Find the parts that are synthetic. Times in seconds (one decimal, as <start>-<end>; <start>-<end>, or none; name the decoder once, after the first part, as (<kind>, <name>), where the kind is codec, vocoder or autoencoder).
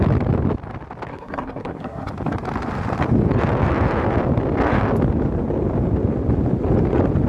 1.1-2.1 (codec, SNAC)